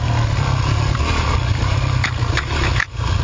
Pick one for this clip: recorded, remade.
recorded